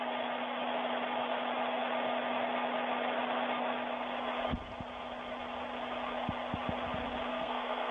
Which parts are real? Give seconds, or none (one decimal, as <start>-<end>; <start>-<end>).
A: 0.0-7.3